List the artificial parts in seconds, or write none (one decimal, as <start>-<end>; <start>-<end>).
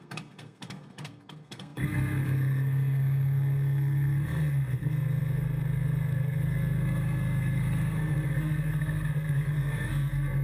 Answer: 0.0-10.4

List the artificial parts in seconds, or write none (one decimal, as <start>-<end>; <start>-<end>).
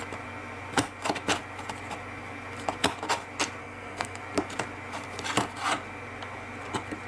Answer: 3.6-4.2